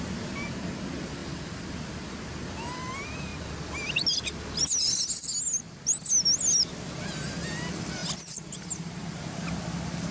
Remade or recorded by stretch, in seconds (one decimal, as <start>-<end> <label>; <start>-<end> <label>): 0.0-10.1 recorded